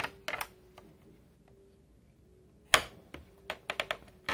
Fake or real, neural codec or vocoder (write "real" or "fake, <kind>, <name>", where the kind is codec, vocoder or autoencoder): real